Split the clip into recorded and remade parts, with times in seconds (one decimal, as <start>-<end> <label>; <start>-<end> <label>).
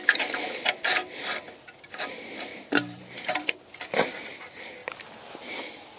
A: 0.0-2.5 recorded; 2.5-3.7 remade; 3.7-6.0 recorded